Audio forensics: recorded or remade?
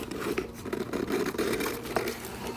recorded